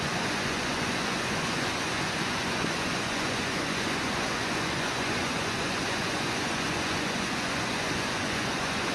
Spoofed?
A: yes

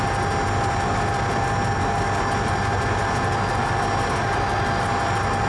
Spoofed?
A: no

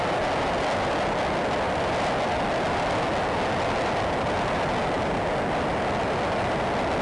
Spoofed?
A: no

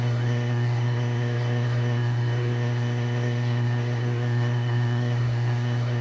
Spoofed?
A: yes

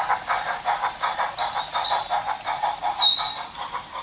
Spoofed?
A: no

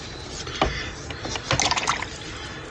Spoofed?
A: no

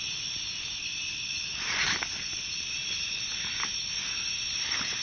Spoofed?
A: no